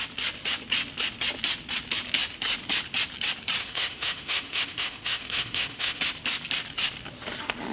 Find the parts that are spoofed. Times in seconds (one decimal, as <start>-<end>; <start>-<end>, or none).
3.6-6.0

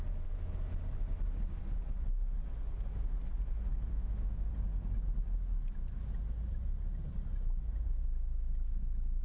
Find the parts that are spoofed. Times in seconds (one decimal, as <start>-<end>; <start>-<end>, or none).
3.9-4.5